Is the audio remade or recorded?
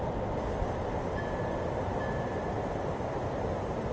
recorded